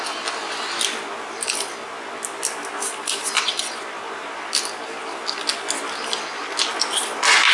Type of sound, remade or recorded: recorded